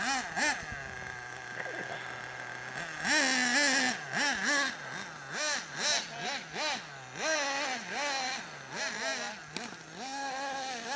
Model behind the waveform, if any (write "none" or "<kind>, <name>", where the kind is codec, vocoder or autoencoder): none